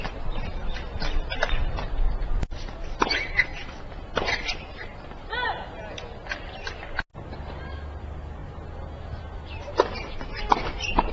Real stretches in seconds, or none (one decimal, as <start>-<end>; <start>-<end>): 0.0-11.1